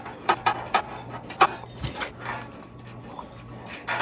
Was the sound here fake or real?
real